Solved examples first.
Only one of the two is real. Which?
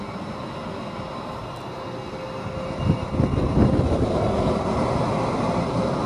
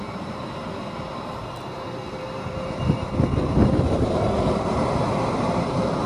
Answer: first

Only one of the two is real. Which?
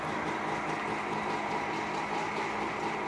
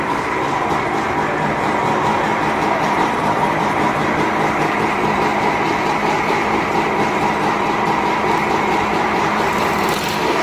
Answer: first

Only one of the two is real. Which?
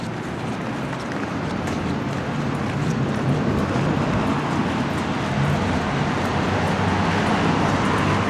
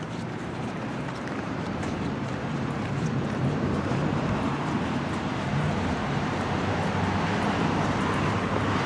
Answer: first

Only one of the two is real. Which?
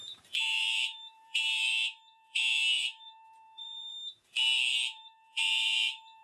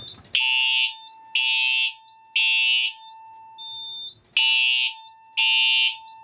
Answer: second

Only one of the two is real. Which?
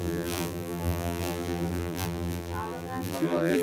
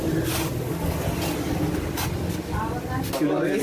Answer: second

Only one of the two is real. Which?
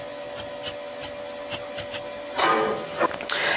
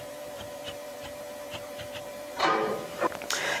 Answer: first